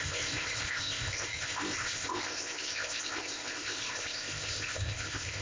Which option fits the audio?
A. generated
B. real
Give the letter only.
A